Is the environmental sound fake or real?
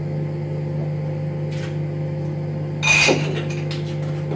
real